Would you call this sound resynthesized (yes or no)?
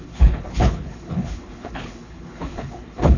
yes